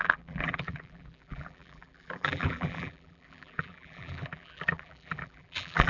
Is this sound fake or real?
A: fake